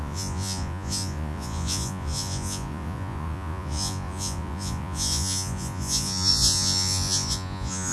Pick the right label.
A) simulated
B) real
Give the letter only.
A